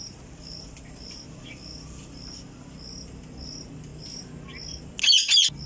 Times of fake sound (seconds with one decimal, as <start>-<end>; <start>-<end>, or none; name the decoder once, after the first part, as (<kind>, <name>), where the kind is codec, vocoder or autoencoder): none